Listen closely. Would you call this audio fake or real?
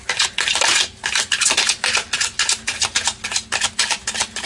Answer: real